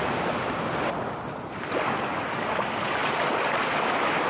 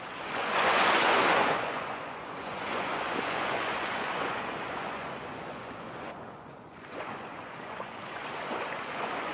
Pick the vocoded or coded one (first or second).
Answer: second